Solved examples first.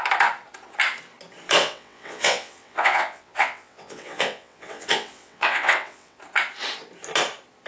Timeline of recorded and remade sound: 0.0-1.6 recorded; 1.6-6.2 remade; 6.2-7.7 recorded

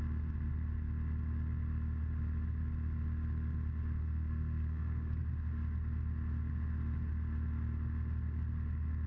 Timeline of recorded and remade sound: 0.0-4.0 recorded; 4.0-5.2 remade; 5.2-9.1 recorded